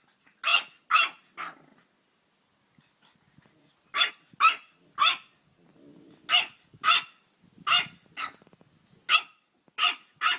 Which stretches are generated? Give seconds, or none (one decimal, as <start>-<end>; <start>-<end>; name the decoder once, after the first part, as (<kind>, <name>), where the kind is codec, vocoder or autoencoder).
none